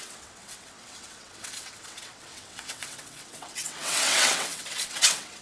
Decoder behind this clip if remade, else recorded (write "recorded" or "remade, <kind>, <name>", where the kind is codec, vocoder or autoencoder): remade, vocoder, WaveNeXt